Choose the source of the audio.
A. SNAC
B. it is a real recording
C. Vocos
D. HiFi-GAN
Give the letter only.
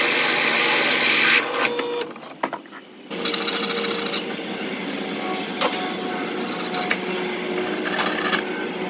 B